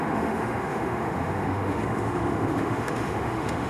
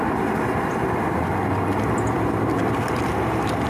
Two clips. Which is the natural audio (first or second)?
second